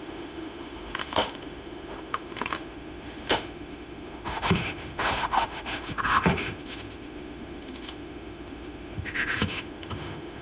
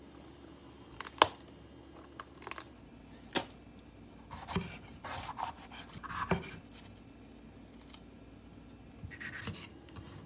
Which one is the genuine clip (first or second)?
second